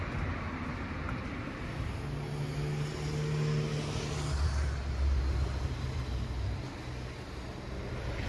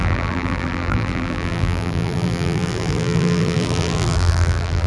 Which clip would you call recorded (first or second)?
first